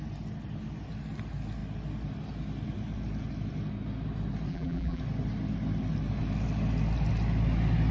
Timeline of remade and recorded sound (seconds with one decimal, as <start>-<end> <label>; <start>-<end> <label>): 0.0-4.5 recorded; 4.5-5.0 remade; 5.0-7.9 recorded